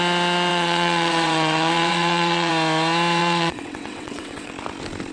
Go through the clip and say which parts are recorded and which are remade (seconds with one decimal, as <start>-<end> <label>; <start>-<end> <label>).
0.0-0.5 recorded; 0.5-2.5 remade; 2.5-3.2 recorded; 3.2-4.5 remade; 4.5-5.1 recorded